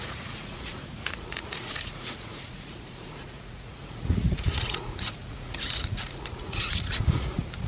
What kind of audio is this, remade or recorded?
remade